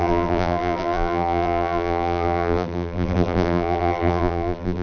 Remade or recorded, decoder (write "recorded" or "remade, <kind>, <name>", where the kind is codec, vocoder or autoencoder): remade, vocoder, BigVGAN v2